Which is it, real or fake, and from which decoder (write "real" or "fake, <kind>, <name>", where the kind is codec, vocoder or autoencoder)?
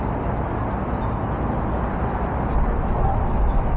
real